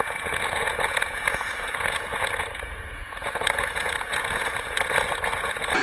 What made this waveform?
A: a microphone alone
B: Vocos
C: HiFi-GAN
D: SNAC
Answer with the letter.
B